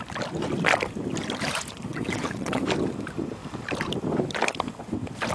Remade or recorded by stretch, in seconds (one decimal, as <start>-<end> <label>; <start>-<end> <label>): 0.0-1.9 recorded; 1.9-2.6 remade; 2.6-5.3 recorded